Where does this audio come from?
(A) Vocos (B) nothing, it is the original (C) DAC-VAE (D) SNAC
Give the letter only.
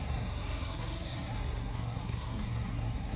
D